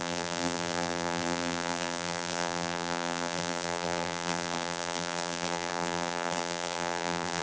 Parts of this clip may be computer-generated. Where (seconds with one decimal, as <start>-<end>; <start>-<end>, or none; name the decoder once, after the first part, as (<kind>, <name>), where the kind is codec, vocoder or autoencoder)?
0.0-7.4 (vocoder, BigVGAN v2)